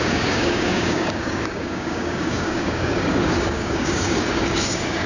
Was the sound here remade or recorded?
remade